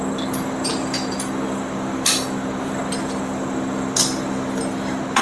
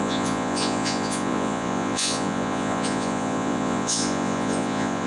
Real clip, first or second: first